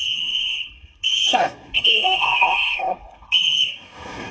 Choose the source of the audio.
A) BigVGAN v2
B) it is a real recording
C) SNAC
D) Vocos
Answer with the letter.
C